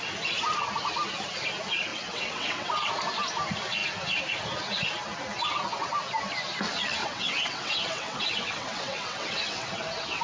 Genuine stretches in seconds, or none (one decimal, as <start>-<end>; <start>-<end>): 0.0-1.9; 2.9-7.0